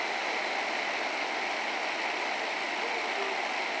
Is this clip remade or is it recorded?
recorded